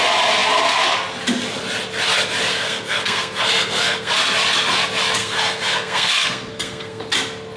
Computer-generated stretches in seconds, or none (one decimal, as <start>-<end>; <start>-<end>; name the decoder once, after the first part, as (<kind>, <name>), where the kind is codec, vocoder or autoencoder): 2.5-4.1 (codec, SNAC); 5.2-7.0